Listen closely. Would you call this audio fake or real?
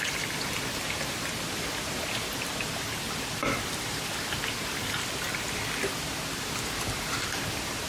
fake